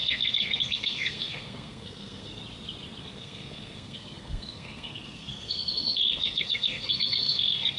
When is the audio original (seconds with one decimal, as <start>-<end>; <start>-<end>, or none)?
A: 2.4-3.0

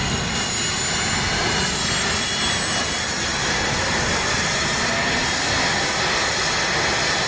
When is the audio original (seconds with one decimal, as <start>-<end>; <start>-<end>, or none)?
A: 0.0-7.3

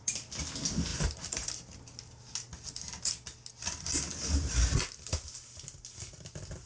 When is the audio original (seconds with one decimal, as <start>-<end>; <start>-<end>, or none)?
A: 0.0-6.7

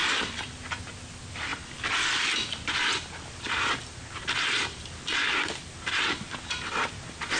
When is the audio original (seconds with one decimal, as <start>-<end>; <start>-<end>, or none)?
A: 0.0-7.4

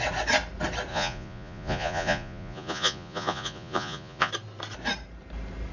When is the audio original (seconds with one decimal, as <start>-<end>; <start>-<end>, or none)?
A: 0.0-0.9; 4.3-5.7